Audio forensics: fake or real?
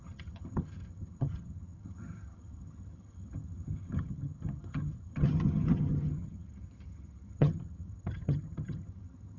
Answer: fake